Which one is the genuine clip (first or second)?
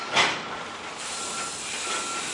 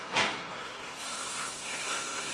first